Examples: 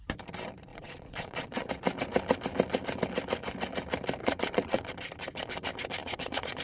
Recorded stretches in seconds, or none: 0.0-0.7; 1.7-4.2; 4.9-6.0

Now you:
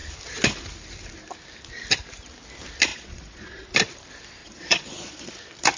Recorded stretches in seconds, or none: 0.0-2.9; 3.7-4.4; 5.3-5.8

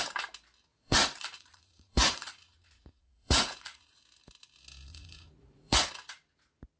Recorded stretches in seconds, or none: 0.0-0.7; 4.0-4.9; 5.8-6.8

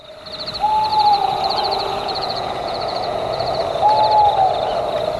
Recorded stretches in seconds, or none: 0.0-0.9; 3.6-5.2

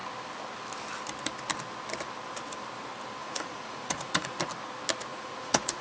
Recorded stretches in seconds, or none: 0.0-3.2; 4.4-5.1

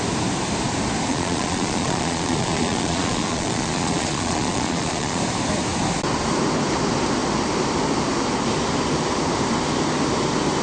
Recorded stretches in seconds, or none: 0.0-1.1; 5.2-10.6

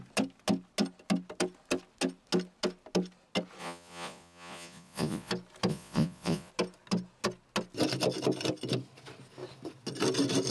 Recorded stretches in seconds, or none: 0.0-3.6; 5.3-5.7; 6.5-10.5

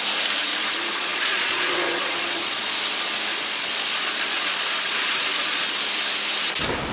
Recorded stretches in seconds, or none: 0.0-0.5; 2.7-3.3; 5.8-6.9